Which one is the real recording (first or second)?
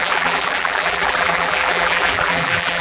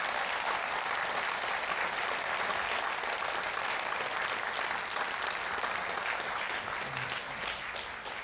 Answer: second